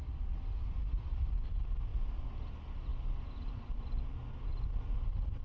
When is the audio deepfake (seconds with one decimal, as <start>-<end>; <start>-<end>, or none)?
1.9-2.5